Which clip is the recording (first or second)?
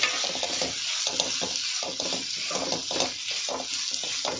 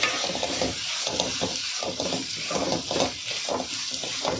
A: first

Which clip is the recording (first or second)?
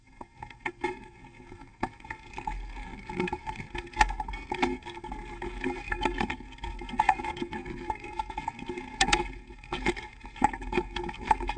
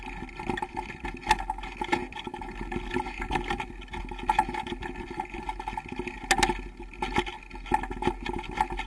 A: second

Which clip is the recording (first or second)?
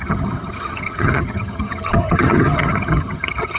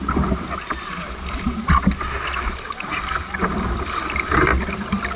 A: second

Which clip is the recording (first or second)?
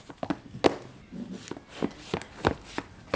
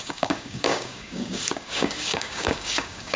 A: first